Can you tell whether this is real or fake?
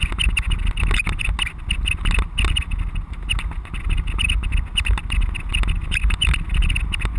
real